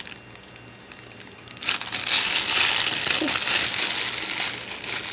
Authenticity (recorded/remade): recorded